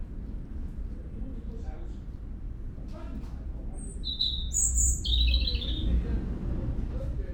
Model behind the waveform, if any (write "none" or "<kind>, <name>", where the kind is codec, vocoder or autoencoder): none